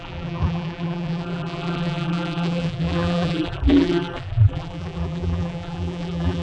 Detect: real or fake fake